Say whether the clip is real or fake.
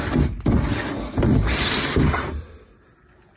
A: real